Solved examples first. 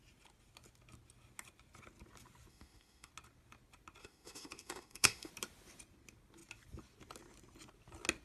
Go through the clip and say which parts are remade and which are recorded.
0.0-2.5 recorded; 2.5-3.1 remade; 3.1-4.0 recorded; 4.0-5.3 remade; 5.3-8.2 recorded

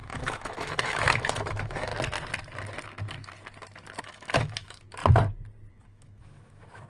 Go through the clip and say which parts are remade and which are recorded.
0.0-1.9 remade; 1.9-4.0 recorded; 4.0-5.0 remade; 5.0-5.7 recorded; 5.7-6.9 remade

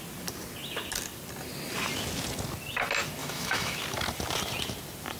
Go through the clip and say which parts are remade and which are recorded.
0.0-3.2 recorded; 3.2-3.8 remade; 3.8-5.2 recorded

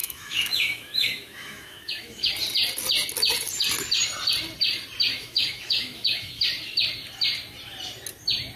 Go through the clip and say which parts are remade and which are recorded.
0.0-2.3 remade; 2.3-5.1 recorded; 5.1-6.4 remade; 6.4-8.6 recorded